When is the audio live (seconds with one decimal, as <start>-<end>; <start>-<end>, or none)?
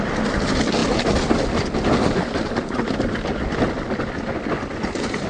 0.0-5.3